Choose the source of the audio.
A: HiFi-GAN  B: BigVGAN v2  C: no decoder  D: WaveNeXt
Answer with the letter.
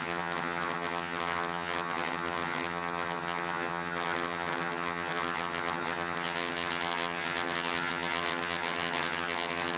A